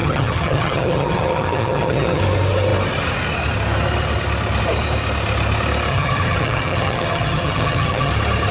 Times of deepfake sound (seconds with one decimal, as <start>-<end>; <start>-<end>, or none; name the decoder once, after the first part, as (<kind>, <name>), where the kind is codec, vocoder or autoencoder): 0.0-2.2 (vocoder, HiFi-GAN); 5.9-8.1